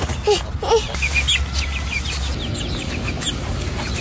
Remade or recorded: recorded